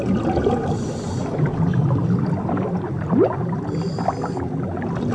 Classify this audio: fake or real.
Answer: real